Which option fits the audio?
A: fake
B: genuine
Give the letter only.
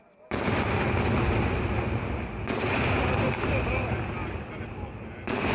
B